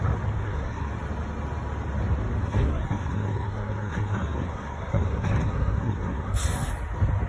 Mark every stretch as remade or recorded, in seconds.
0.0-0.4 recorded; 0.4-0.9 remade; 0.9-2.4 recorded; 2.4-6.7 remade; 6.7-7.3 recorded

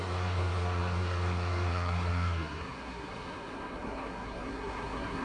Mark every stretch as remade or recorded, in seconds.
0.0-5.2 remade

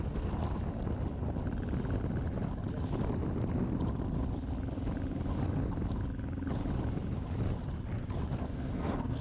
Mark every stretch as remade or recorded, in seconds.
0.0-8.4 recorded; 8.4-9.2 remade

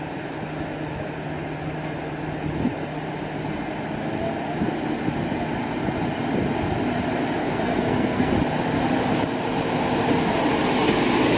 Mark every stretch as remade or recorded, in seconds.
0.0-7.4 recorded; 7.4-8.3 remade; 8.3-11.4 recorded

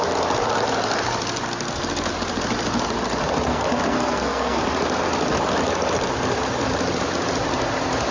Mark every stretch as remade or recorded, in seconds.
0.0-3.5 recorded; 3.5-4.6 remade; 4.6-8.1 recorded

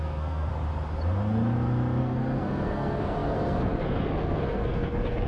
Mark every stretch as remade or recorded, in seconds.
0.0-0.5 remade; 0.5-2.0 recorded; 2.0-5.3 remade

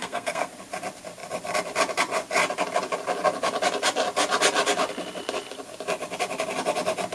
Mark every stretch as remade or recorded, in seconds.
0.0-0.5 remade; 0.5-7.1 recorded